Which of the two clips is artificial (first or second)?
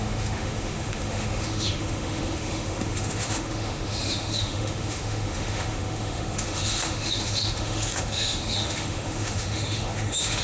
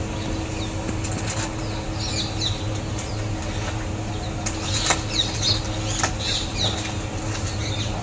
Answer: first